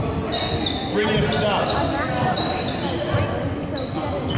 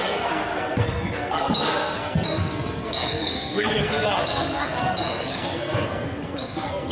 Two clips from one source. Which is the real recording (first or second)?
first